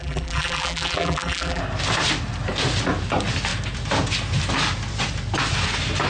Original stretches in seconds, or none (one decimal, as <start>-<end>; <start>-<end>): 1.6-6.1